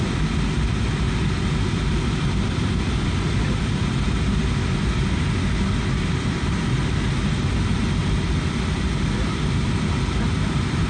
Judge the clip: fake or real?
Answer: real